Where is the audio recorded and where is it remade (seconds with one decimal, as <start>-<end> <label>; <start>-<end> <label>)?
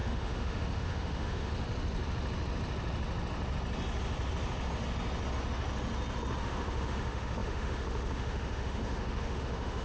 0.0-1.5 remade; 1.5-6.4 recorded; 6.4-9.8 remade